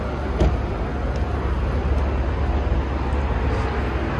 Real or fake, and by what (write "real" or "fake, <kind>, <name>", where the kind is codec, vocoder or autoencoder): real